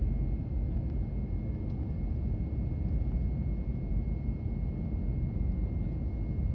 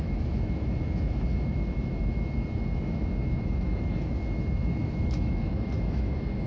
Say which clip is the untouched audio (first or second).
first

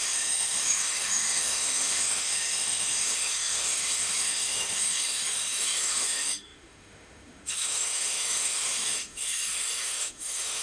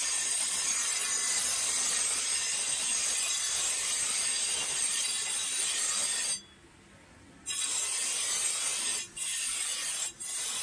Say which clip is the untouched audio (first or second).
second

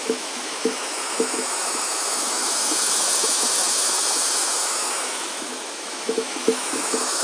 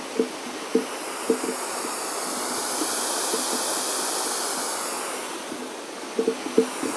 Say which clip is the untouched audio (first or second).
second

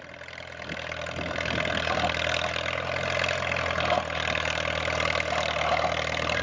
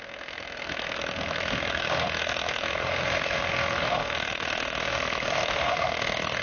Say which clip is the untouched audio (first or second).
first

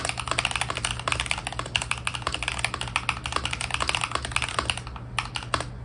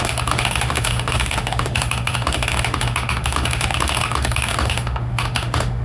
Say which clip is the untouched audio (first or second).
first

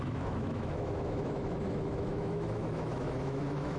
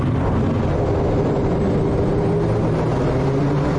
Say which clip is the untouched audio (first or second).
second